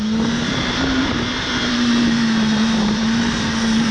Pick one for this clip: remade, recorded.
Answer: remade